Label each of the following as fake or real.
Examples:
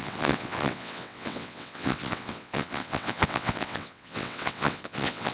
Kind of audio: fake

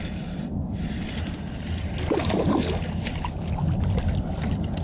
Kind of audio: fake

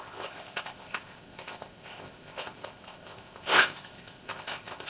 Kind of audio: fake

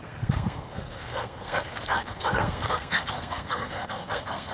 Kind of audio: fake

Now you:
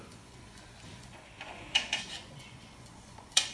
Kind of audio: fake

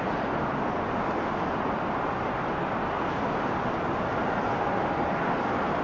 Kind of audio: real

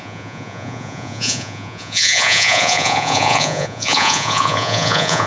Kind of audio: fake